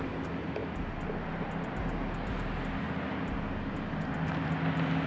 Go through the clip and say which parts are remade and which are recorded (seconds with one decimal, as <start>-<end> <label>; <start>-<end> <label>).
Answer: 0.0-5.1 recorded